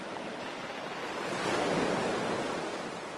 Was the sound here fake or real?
real